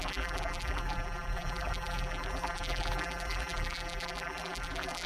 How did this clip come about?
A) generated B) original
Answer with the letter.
A